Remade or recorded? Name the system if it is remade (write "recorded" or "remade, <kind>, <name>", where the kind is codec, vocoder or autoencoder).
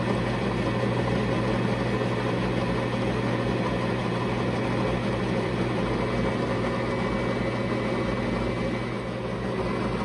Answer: recorded